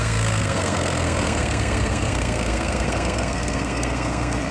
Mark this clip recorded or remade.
remade